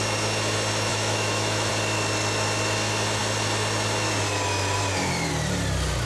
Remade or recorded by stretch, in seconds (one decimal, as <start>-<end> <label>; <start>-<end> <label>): 0.0-0.9 recorded; 0.9-1.7 remade; 1.7-6.1 recorded